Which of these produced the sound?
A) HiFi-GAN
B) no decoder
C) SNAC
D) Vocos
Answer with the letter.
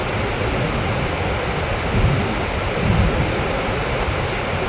B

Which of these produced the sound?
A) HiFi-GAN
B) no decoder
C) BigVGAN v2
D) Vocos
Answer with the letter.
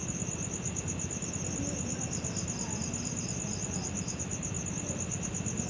B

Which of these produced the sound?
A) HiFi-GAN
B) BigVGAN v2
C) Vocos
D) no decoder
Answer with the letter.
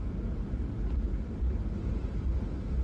D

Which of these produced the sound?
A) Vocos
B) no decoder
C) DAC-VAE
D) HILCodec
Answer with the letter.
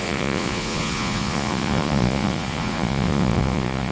A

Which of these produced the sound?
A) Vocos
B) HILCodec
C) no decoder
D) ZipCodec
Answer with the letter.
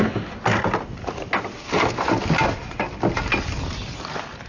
C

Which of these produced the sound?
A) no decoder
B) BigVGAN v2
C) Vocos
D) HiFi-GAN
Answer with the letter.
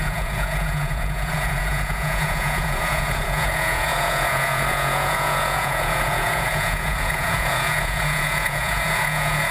C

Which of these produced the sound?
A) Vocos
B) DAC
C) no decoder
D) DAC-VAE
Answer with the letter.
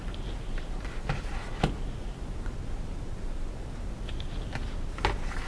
C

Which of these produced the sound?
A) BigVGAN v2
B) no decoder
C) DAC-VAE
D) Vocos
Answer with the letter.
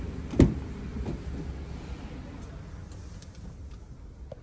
B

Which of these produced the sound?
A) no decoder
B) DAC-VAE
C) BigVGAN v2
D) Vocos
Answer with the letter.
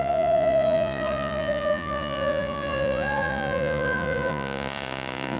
D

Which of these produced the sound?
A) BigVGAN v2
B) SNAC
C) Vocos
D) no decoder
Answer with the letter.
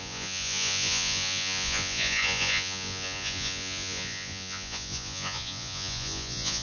C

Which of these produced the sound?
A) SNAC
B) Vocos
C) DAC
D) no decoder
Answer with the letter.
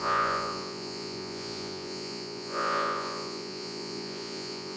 B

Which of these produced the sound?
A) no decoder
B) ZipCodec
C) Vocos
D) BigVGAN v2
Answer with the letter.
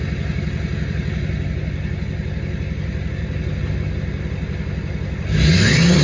A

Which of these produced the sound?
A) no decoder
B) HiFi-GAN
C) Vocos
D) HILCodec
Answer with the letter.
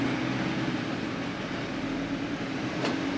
A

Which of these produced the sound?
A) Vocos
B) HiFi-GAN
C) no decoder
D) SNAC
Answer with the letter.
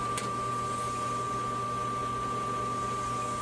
C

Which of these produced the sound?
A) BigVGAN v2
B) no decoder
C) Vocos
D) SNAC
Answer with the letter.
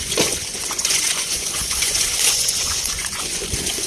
C